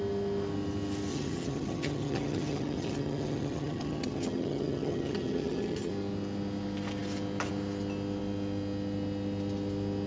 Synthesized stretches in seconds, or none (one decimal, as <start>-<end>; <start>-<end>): 1.1-5.9